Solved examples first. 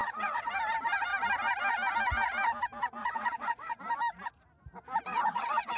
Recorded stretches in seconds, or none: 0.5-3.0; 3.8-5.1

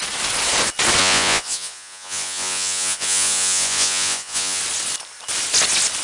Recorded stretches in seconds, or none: 0.0-1.0; 4.6-6.0